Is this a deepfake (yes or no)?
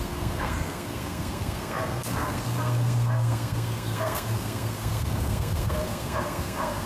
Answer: yes